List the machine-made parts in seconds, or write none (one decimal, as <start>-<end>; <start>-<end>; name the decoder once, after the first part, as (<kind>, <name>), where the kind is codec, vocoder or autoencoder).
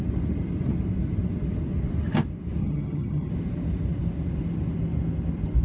2.6-3.3 (vocoder, HiFi-GAN)